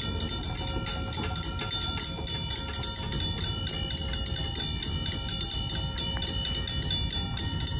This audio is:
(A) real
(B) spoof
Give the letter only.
A